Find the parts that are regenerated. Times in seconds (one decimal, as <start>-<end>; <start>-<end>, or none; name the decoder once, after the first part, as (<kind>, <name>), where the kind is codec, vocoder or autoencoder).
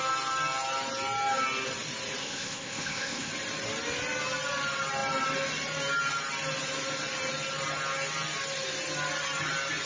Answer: 2.2-3.3 (codec, ZipCodec)